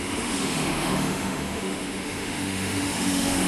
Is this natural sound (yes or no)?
no